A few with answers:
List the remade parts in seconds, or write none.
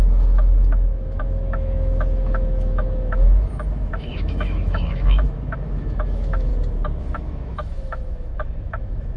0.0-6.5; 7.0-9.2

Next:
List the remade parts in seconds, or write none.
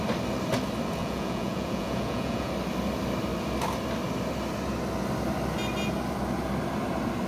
1.0-2.5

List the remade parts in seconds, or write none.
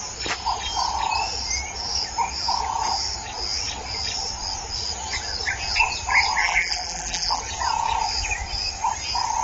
6.4-7.4